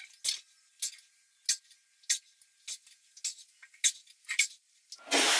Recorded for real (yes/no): yes